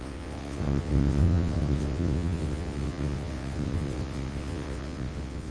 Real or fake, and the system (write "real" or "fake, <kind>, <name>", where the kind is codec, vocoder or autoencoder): fake, vocoder, WaveNeXt